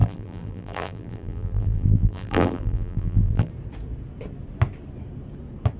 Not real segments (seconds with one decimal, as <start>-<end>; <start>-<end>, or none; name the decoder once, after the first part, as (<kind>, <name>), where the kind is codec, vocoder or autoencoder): 0.0-3.5 (vocoder, BigVGAN v2)